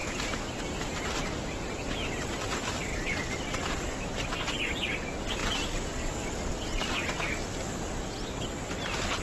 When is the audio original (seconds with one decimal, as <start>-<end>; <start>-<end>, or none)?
0.6-2.9; 4.5-9.2